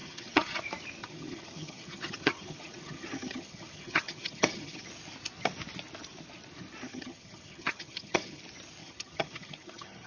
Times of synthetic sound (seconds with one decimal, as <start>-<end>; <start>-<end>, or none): 0.0-0.6; 1.0-4.9; 6.9-8.4; 8.8-10.1